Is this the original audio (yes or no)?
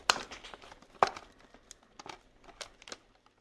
yes